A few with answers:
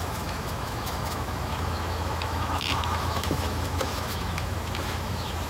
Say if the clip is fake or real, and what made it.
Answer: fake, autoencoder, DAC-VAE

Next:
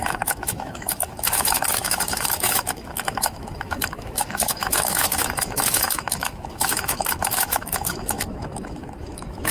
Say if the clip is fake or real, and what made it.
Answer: fake, autoencoder, DAC-VAE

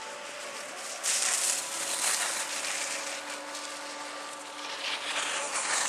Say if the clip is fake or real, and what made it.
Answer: real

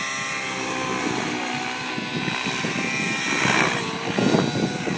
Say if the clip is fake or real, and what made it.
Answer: real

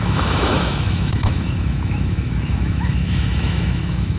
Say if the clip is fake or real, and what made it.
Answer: fake, autoencoder, DAC-VAE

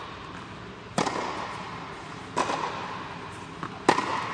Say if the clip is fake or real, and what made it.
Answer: real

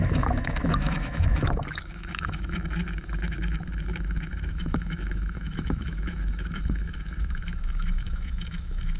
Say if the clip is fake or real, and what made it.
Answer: fake, autoencoder, DAC-VAE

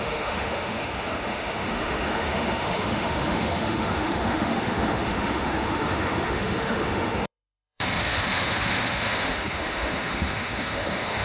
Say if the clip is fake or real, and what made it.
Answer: fake, autoencoder, DAC-VAE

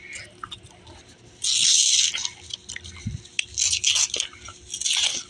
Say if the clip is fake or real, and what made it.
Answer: real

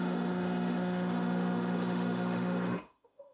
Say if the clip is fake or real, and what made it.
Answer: fake, autoencoder, DAC-VAE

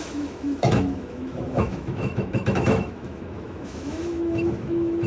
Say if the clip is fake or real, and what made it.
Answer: fake, autoencoder, DAC-VAE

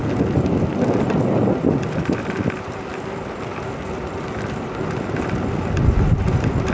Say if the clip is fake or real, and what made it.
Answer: real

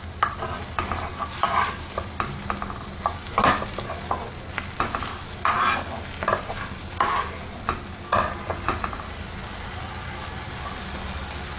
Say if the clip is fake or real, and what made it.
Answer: real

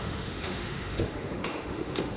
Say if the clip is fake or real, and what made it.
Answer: fake, autoencoder, DAC-VAE